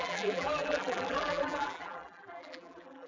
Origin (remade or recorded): remade